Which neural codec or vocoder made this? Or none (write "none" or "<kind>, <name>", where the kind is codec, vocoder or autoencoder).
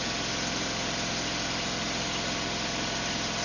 none